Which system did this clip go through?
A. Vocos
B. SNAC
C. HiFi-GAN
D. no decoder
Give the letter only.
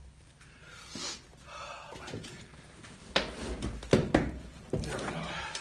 D